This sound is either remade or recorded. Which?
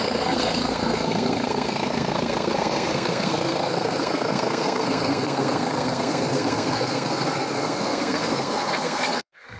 remade